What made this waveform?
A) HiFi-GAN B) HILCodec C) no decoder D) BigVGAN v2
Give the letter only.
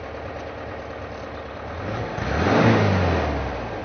C